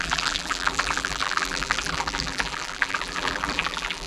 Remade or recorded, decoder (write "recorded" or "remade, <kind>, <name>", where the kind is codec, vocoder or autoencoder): remade, vocoder, BigVGAN v2